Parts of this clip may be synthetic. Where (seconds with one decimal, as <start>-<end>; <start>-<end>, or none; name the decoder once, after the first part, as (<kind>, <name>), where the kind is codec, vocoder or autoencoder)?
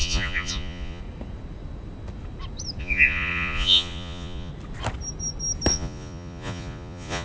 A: 0.0-1.0 (vocoder, Vocos); 2.8-4.5; 5.7-7.2